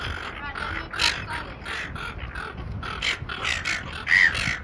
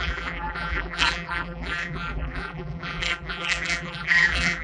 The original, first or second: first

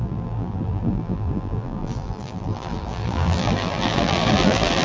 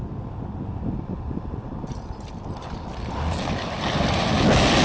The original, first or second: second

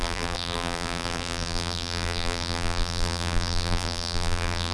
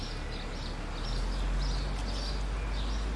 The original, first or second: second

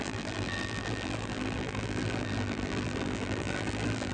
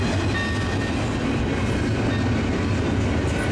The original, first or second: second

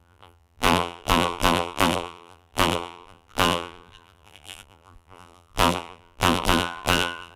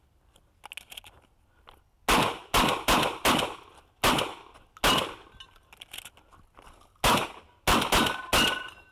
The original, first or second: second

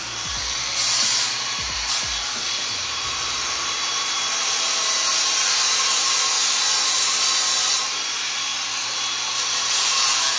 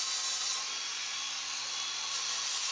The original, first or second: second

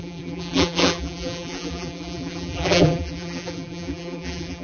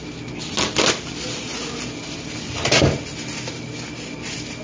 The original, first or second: second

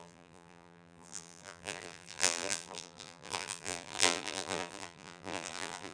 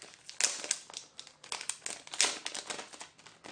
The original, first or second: second